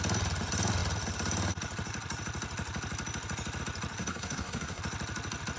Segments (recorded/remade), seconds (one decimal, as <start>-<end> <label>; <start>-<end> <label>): 0.0-4.0 recorded; 4.0-4.8 remade; 4.8-5.6 recorded